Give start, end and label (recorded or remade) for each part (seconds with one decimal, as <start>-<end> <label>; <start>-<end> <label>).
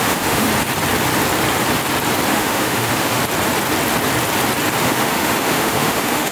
0.0-0.5 remade; 0.5-2.3 recorded; 2.3-3.2 remade; 3.2-4.8 recorded; 4.8-6.3 remade